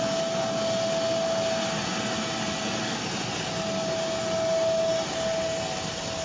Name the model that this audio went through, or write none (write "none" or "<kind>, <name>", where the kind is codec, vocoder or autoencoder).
none